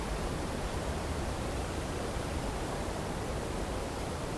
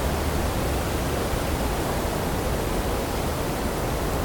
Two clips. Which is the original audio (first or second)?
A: second